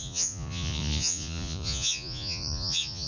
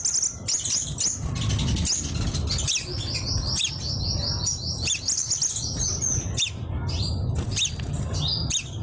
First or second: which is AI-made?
first